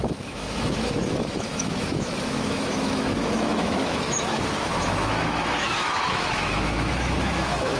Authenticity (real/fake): fake